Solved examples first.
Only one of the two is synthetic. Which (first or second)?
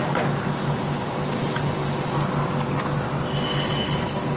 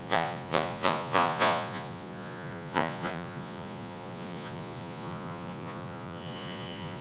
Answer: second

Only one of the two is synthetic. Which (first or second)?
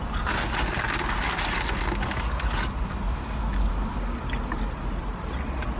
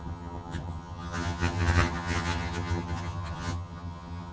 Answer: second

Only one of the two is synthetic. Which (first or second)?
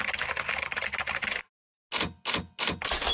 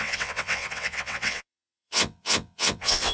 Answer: second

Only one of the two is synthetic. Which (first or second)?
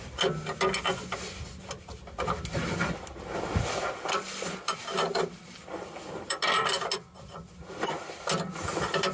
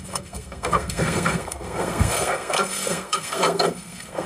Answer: second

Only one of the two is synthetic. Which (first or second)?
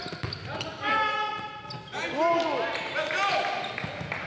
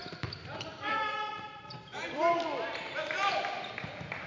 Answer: second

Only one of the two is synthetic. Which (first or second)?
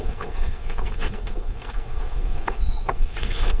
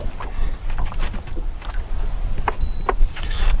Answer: first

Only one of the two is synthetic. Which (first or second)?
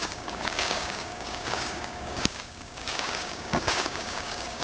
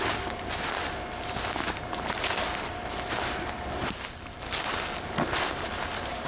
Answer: first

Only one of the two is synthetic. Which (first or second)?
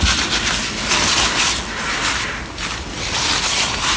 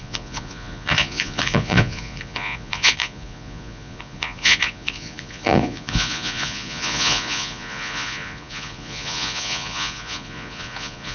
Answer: second